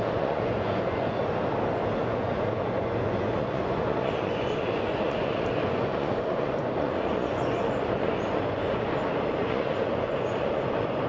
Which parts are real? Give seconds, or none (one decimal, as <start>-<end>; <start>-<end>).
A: 1.2-2.0